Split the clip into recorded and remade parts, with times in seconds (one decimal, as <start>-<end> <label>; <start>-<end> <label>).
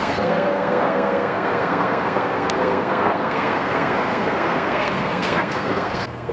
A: 0.0-6.3 remade